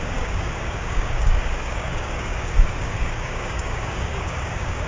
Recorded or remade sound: remade